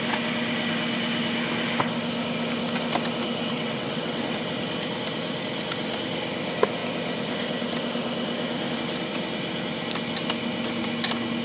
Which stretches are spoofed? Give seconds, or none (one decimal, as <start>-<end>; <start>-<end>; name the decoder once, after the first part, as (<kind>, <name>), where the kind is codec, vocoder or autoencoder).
3.5-4.2 (vocoder, WaveNeXt)